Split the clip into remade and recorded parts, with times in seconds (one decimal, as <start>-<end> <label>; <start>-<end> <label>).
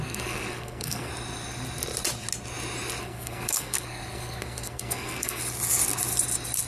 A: 0.0-1.1 remade; 1.1-3.0 recorded; 3.0-5.4 remade; 5.4-6.7 recorded